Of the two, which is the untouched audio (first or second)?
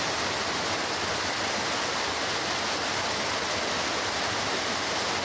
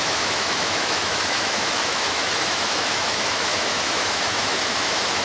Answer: first